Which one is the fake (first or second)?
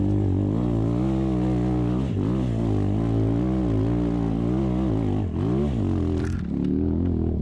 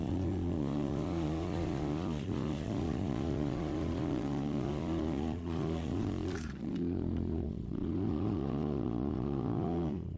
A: second